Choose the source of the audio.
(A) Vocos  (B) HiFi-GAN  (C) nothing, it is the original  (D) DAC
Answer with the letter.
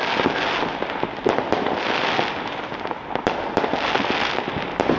C